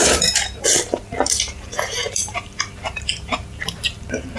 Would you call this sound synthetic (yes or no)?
yes